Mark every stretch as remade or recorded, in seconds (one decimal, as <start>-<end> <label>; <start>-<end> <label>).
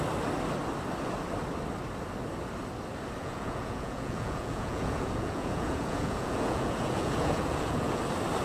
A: 0.0-3.2 recorded; 3.2-8.0 remade; 8.0-8.4 recorded